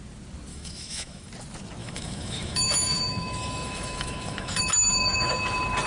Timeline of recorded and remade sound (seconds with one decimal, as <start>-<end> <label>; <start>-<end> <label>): 0.0-0.5 recorded; 0.5-1.3 remade; 1.3-1.8 recorded; 1.8-5.3 remade; 5.3-5.9 recorded